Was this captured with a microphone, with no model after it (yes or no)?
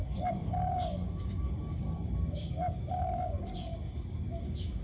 no